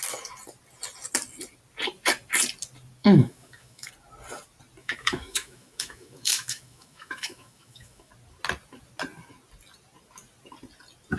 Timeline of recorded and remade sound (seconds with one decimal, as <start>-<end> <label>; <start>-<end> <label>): 0.0-3.0 recorded; 3.0-3.9 remade; 3.9-4.8 recorded; 4.8-8.1 remade; 8.1-11.2 recorded